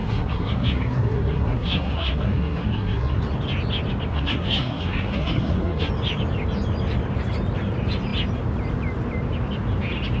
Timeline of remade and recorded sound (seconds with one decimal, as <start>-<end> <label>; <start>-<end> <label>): 0.0-3.2 remade; 3.2-4.1 recorded; 4.1-5.9 remade; 5.9-10.2 recorded